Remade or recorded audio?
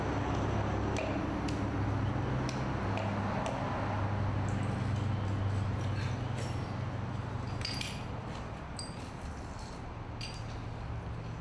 recorded